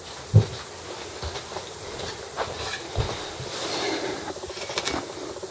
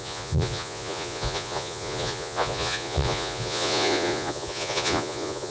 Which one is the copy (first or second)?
second